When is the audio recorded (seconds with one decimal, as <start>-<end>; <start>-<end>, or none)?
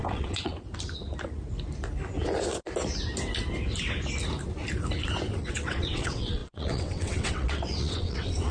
0.5-5.4